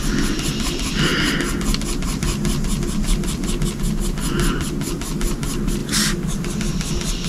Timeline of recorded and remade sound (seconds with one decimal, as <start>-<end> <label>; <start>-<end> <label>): 0.0-7.3 recorded